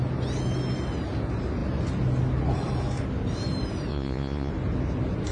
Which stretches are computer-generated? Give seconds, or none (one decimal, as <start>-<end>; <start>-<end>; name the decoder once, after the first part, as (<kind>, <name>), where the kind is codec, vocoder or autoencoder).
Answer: 3.9-4.5 (vocoder, Vocos)